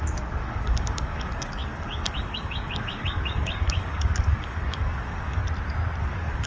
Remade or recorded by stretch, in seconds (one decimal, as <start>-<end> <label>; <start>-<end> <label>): 0.0-5.4 remade; 5.4-6.0 recorded; 6.0-6.5 remade